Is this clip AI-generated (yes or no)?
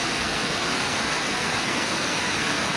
yes